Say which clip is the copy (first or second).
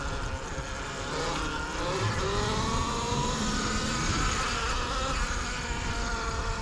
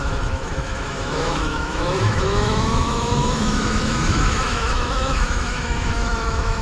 second